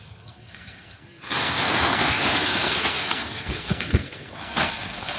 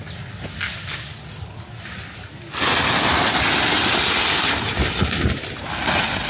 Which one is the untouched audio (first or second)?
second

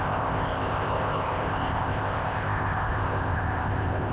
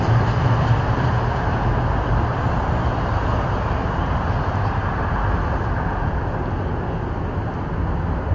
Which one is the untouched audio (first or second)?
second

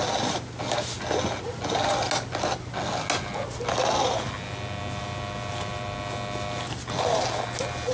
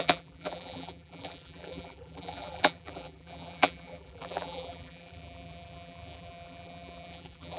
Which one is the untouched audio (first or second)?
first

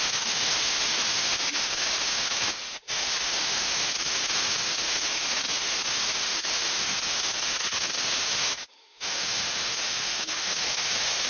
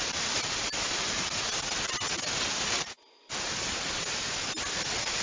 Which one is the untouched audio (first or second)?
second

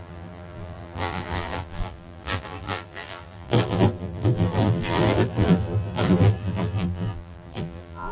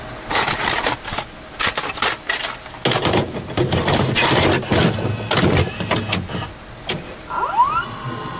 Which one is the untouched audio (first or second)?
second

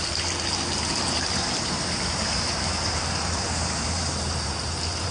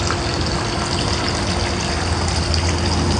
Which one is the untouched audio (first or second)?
second